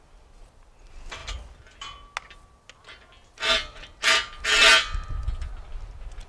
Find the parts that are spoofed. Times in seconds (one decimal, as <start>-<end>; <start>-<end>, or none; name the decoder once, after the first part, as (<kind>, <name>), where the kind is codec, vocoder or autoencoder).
none

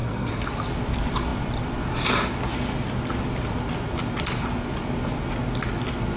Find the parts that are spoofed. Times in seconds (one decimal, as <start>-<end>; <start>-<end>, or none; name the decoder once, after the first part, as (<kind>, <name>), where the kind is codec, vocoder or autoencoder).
0.0-0.5 (codec, SNAC)

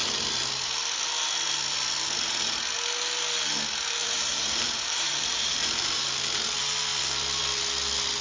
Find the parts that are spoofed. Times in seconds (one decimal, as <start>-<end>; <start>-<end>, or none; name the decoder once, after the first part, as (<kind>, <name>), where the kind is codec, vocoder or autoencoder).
4.0-6.1 (vocoder, BigVGAN v2)

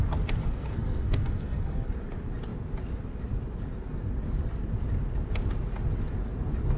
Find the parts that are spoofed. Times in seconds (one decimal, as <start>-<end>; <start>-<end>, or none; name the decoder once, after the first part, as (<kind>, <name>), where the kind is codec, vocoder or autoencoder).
0.4-1.9 (codec, SNAC)

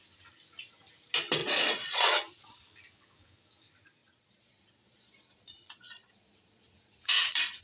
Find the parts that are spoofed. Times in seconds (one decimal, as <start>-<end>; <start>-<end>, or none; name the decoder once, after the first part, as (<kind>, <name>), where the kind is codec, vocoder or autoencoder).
1.4-2.7 (vocoder, Vocos); 4.0-7.6

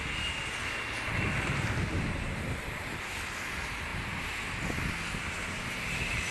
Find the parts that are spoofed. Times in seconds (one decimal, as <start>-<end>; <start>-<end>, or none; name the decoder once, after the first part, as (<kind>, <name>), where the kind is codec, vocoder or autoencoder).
none